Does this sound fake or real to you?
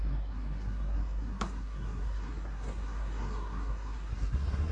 fake